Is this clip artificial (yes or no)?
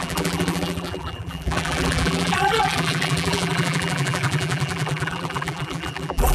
yes